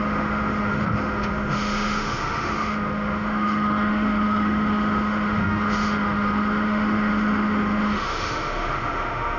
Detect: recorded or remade remade